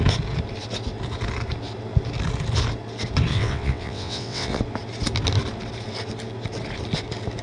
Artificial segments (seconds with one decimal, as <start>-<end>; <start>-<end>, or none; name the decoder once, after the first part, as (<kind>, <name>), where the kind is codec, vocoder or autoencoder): 3.3-4.6 (vocoder, WaveNeXt)